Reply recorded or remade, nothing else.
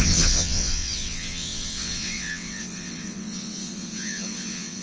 remade